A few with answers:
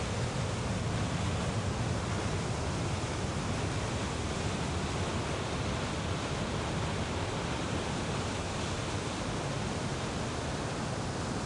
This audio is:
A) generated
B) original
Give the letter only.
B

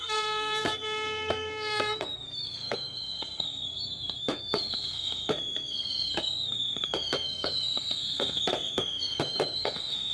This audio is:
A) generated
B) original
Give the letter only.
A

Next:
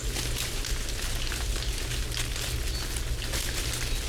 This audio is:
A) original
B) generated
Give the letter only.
A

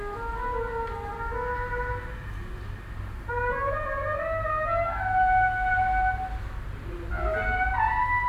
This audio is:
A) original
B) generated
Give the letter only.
A